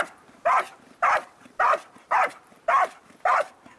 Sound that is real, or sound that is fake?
fake